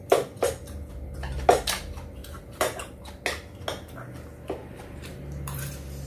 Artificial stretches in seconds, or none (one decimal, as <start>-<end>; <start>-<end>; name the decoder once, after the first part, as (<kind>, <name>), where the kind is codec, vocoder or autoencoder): 2.2-3.0 (vocoder, BigVGAN v2); 4.6-5.6